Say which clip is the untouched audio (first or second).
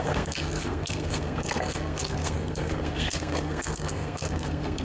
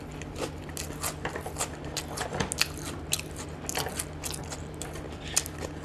second